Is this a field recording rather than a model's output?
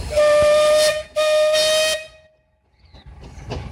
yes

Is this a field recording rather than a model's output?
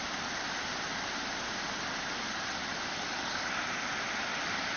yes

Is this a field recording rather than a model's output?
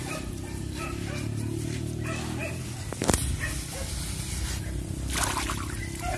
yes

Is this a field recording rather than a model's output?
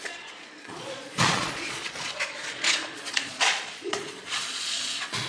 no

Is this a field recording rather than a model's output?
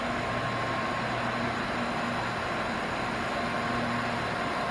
yes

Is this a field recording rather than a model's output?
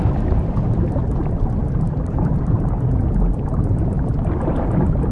yes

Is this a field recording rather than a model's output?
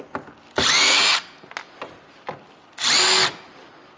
yes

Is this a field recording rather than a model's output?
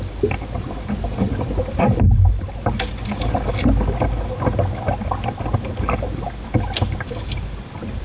yes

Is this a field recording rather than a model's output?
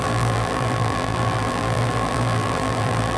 no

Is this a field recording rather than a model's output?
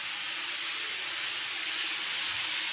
yes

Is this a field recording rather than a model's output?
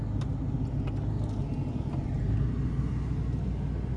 yes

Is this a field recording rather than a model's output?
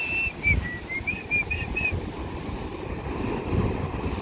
yes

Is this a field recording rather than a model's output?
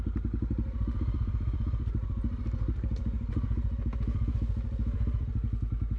yes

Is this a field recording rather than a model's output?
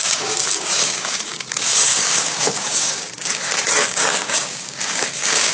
no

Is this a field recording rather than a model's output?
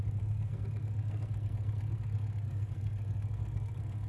no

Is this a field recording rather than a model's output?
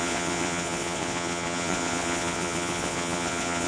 no